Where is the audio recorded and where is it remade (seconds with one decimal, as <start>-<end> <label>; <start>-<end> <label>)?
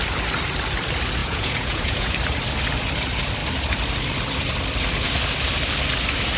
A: 0.0-1.2 recorded; 1.2-2.1 remade; 2.1-6.4 recorded